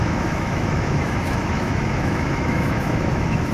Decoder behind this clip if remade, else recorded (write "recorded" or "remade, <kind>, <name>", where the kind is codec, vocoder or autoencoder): remade, autoencoder, DAC-VAE